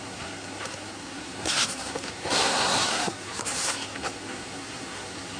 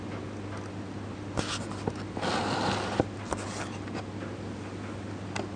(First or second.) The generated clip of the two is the first